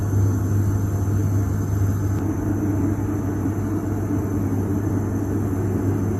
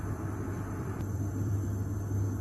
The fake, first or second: second